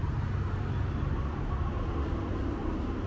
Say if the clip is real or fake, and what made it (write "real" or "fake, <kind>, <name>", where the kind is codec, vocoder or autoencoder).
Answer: real